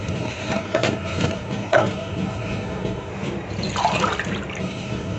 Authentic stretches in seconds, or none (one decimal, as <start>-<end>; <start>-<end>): 3.1-4.6

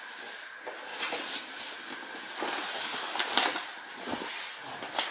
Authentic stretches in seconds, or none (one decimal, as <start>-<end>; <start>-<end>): 0.0-0.9; 1.8-5.1

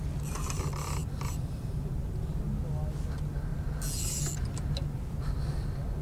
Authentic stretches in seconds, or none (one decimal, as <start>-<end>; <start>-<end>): 0.0-1.0; 2.4-6.0

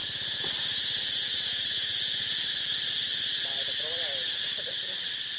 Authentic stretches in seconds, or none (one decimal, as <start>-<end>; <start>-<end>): 2.5-5.4